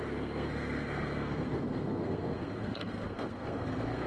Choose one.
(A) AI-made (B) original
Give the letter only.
A